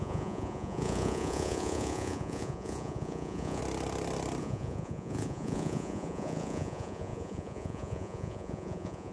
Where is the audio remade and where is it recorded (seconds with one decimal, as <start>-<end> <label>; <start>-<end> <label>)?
0.0-3.6 remade; 3.6-4.4 recorded; 4.4-9.1 remade